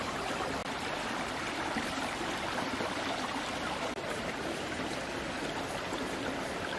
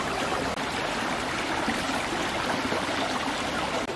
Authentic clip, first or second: second